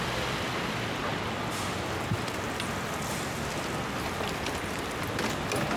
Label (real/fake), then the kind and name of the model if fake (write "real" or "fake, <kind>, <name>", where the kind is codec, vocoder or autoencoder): real